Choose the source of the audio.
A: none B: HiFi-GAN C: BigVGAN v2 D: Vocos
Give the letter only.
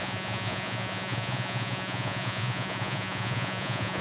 D